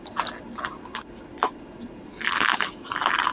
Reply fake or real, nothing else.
real